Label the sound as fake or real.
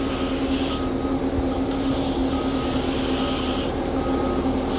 real